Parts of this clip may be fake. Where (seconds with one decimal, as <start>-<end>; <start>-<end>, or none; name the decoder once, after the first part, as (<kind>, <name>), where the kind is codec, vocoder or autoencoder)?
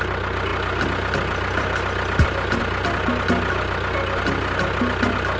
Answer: none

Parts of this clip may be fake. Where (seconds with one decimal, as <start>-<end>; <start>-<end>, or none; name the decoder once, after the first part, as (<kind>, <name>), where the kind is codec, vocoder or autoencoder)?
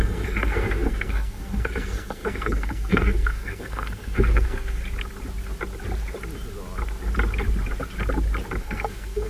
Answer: 0.0-4.8 (codec, SNAC); 8.6-9.3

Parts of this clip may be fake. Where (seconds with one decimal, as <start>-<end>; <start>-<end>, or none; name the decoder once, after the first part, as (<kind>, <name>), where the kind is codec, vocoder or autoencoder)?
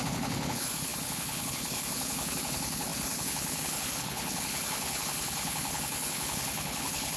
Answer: 0.0-7.2 (codec, HILCodec)